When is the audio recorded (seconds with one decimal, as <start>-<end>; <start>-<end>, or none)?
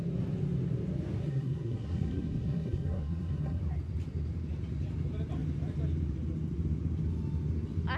0.0-1.2; 3.6-8.0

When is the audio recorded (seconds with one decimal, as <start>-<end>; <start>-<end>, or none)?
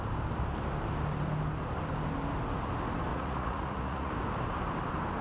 0.0-3.1; 4.1-5.2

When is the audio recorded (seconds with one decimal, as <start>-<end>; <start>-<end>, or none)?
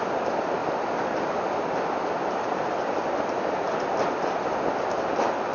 0.0-5.5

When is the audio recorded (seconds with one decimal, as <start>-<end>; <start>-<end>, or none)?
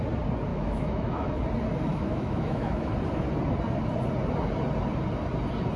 0.0-0.5; 1.4-1.9; 2.9-5.8